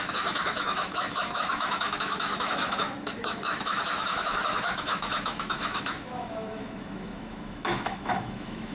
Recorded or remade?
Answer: remade